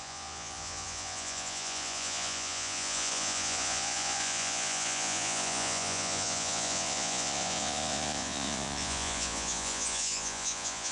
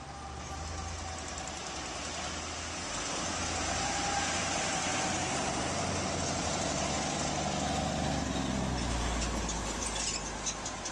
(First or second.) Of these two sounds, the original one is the second